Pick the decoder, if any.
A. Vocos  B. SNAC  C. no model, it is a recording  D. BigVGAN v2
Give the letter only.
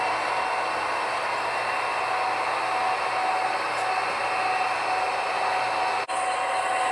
C